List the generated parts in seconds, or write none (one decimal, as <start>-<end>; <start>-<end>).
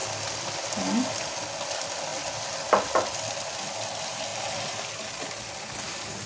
none